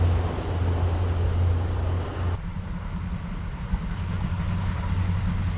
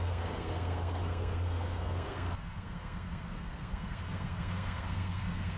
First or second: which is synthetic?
second